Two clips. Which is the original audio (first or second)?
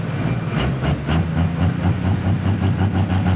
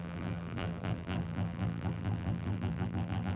first